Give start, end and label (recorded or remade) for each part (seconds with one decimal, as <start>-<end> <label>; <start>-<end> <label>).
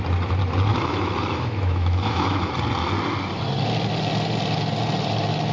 0.0-0.7 recorded; 0.7-2.5 remade; 2.5-5.5 recorded